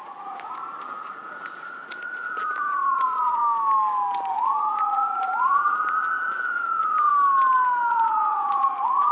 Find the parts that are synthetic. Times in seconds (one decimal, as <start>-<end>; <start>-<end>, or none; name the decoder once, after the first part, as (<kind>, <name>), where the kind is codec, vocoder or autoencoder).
0.0-3.4 (vocoder, Vocos); 4.3-7.1; 7.9-9.1